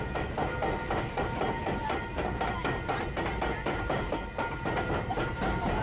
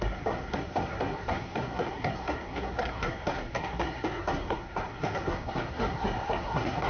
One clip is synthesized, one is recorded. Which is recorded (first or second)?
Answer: first